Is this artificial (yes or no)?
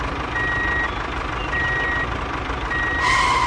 no